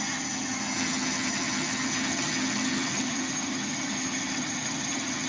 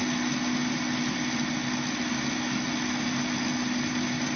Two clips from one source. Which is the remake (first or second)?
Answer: first